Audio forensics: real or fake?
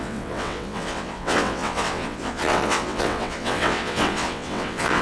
fake